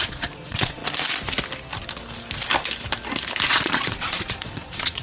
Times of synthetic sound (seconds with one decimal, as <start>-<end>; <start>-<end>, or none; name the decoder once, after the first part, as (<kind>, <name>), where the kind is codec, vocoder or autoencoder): 0.0-0.8 (vocoder, Vocos); 3.5-5.0